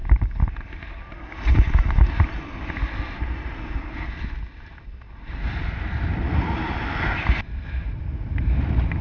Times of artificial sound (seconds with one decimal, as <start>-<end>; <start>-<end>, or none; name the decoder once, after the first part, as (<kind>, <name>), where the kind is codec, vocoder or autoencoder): none